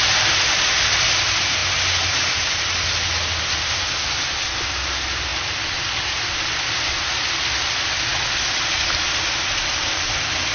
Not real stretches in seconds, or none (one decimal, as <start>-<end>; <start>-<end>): none